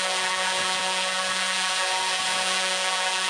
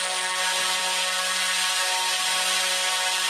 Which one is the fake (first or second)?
first